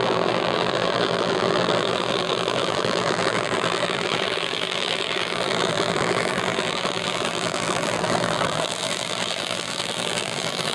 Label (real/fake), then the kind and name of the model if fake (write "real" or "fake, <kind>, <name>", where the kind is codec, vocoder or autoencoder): fake, vocoder, BigVGAN v2